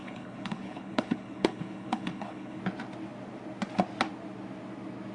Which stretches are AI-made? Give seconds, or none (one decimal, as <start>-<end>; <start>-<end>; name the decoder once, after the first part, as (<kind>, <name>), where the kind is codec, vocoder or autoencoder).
0.0-2.6 (codec, HILCodec)